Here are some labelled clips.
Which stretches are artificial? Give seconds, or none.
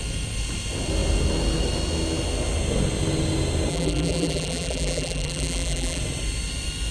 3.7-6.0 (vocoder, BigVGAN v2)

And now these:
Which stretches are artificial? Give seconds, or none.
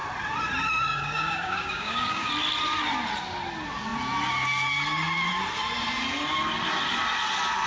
0.9-2.3 (codec, DAC)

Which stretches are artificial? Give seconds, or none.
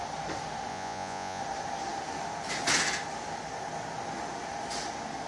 0.7-1.4 (vocoder, Vocos)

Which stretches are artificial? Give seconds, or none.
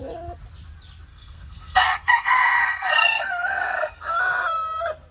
1.1-4.2 (codec, SNAC)